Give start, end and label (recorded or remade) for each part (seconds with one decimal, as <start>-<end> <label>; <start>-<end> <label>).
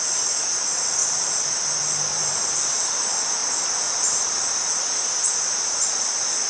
0.0-1.0 recorded; 1.0-1.6 remade; 1.6-2.1 recorded; 2.1-3.0 remade; 3.0-3.4 recorded; 3.4-4.8 remade; 4.8-6.5 recorded